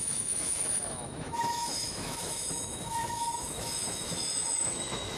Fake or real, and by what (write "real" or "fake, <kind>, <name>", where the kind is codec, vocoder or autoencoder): fake, autoencoder, DAC-VAE